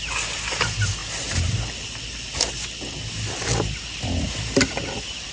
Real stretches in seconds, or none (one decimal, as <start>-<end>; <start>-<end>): 0.0-5.3